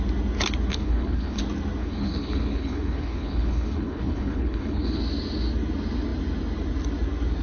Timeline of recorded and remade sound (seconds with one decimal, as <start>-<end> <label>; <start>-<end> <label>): 0.0-0.7 recorded; 0.7-1.4 remade; 1.4-1.8 recorded; 1.8-5.0 remade; 5.0-7.4 recorded